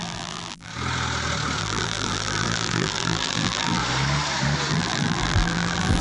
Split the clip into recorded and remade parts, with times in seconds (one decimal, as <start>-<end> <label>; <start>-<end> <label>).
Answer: 0.0-0.7 remade; 0.7-1.6 recorded; 1.6-3.8 remade; 3.8-4.7 recorded; 4.7-6.0 remade